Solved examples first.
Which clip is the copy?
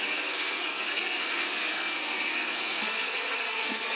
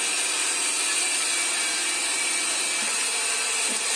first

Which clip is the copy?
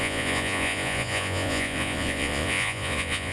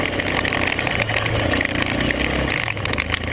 first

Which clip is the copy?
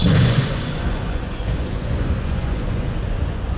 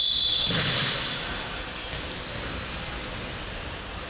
first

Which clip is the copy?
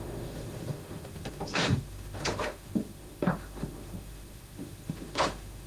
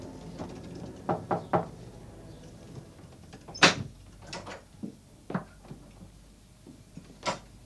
first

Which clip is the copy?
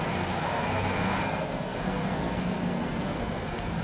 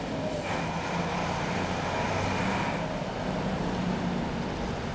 first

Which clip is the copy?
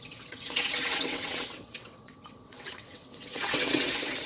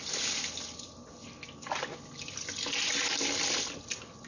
first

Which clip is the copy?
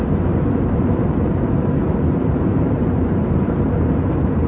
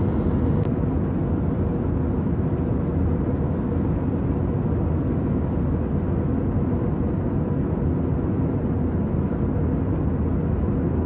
first